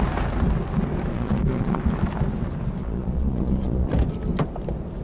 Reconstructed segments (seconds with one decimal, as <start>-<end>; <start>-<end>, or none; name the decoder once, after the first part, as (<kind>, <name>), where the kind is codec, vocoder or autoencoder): 1.1-1.8 (vocoder, Vocos); 2.8-3.9